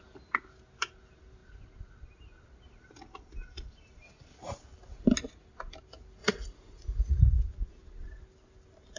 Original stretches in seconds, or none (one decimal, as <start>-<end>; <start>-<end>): 0.0-6.2; 7.2-9.0